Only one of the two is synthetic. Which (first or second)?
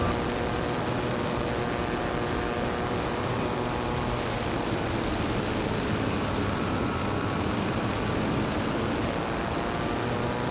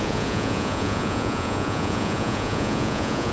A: second